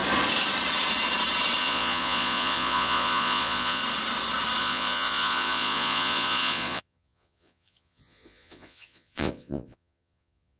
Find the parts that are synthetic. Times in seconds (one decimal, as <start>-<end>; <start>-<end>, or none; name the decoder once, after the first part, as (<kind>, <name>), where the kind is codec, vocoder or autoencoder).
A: 1.6-3.8 (vocoder, Vocos); 4.6-10.6